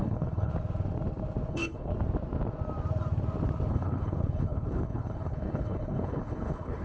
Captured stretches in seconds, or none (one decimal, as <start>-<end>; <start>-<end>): 0.5-1.5; 1.9-3.7